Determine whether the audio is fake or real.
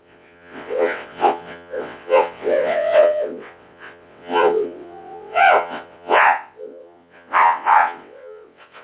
fake